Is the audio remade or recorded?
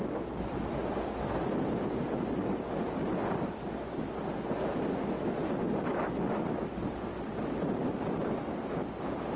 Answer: recorded